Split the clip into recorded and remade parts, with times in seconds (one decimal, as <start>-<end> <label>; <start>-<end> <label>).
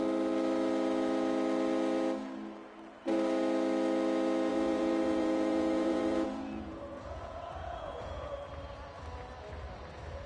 0.0-4.5 recorded; 4.5-8.4 remade; 8.4-10.3 recorded